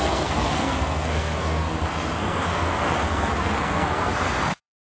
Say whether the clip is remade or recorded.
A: remade